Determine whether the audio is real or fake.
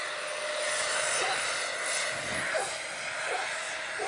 real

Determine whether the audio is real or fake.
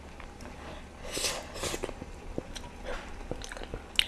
real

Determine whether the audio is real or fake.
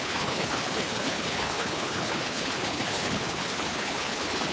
fake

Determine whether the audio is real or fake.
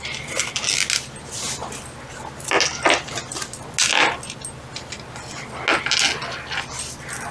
real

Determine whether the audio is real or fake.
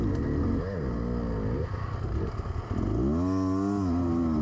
real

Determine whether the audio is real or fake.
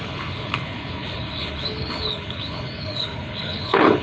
fake